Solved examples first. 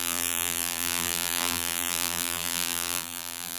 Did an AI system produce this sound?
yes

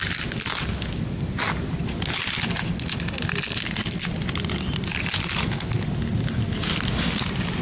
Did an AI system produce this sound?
no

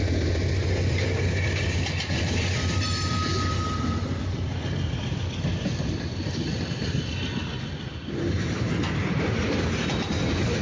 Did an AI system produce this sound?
no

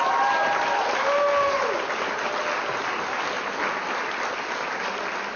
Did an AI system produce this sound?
no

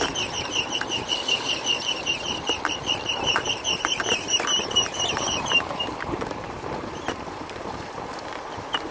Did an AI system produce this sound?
yes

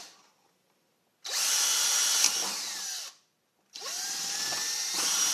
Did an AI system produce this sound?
no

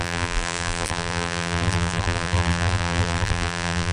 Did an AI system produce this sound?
yes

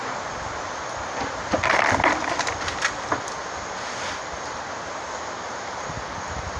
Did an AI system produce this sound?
yes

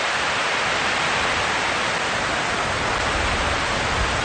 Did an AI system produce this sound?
no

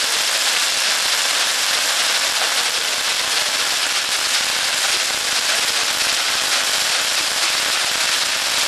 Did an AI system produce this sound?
no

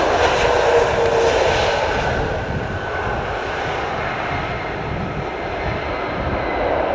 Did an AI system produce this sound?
no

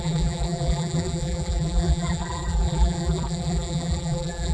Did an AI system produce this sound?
yes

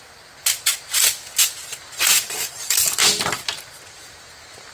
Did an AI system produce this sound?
no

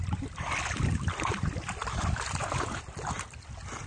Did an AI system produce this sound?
no